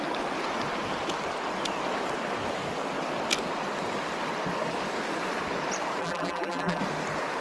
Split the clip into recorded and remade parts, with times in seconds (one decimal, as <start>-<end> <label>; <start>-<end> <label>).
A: 0.0-6.0 recorded; 6.0-6.8 remade; 6.8-7.4 recorded

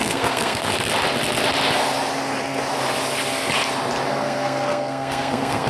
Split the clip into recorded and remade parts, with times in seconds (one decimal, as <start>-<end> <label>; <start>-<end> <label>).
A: 0.0-0.7 remade; 0.7-4.1 recorded; 4.1-5.7 remade

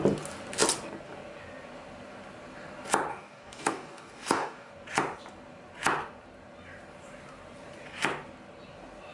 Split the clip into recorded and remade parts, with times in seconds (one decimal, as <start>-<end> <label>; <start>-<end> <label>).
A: 0.0-3.1 recorded; 3.1-4.7 remade; 4.7-9.1 recorded

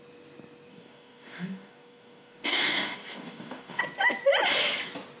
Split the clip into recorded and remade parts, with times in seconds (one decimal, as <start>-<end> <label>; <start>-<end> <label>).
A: 0.0-0.7 recorded; 0.7-3.8 remade; 3.8-5.2 recorded

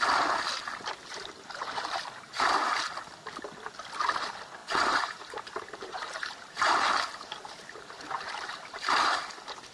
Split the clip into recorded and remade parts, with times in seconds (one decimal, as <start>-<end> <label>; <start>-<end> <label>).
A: 0.0-1.0 recorded; 1.0-2.5 remade; 2.5-4.6 recorded; 4.6-9.2 remade; 9.2-9.7 recorded

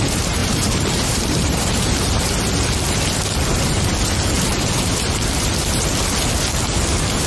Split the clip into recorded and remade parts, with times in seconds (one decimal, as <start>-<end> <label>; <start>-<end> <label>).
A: 0.0-0.4 recorded; 0.4-2.2 remade; 2.2-4.5 recorded; 4.5-5.9 remade; 5.9-7.3 recorded

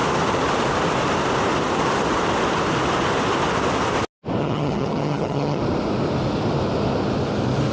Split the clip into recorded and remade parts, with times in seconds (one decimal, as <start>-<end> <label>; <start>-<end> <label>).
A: 0.0-4.4 recorded; 4.4-5.6 remade; 5.6-7.7 recorded

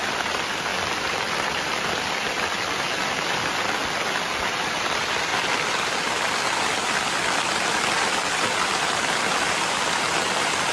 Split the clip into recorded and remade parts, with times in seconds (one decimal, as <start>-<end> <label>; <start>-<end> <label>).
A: 0.0-0.7 remade; 0.7-4.8 recorded; 4.8-10.7 remade